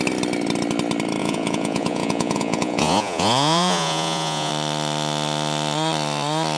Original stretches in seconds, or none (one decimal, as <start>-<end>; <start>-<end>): 0.0-1.2; 4.5-6.6